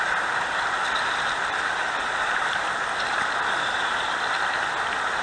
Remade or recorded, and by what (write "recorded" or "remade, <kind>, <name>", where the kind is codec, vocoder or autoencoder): recorded